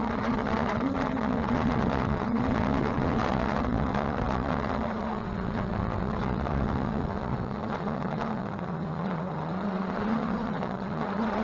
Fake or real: fake